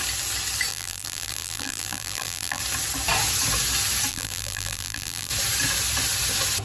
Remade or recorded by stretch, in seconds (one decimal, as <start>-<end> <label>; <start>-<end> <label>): 0.0-0.7 recorded; 0.7-2.6 remade; 2.6-4.1 recorded; 4.1-5.3 remade; 5.3-6.6 recorded